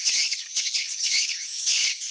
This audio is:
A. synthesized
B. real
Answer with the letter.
A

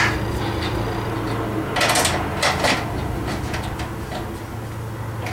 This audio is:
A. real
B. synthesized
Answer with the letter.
A